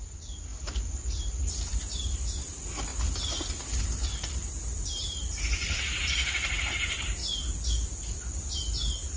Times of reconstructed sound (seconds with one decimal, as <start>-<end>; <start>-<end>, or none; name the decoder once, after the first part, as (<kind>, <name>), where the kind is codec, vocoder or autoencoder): 0.0-1.8 (vocoder, BigVGAN v2); 2.4-2.9; 3.9-7.2